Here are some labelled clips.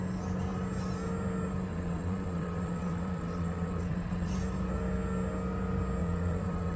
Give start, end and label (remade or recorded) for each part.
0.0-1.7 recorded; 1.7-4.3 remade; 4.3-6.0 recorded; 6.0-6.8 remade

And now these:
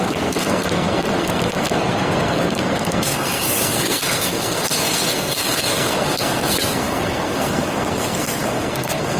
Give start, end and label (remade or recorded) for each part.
0.0-9.2 remade

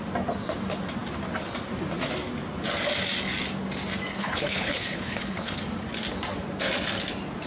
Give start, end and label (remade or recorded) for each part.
0.0-4.1 recorded; 4.1-5.6 remade; 5.6-7.5 recorded

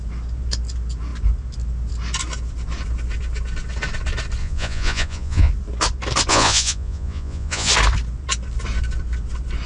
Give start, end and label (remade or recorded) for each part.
0.0-4.4 recorded; 4.4-5.5 remade; 5.5-6.3 recorded; 6.3-7.7 remade; 7.7-9.7 recorded